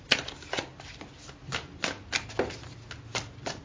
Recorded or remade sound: recorded